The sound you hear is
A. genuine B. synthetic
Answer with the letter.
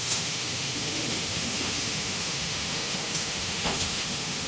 B